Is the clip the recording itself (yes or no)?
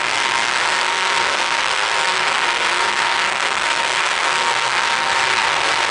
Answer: no